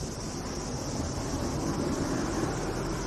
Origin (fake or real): real